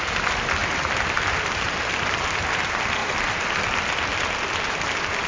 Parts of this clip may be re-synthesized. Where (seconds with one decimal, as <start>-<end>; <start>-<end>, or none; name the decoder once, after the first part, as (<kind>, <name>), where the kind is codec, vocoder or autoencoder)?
none